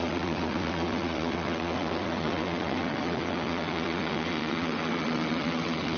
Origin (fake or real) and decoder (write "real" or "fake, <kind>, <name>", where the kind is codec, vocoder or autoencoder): fake, vocoder, WaveNeXt